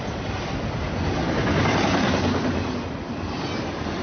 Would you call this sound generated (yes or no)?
no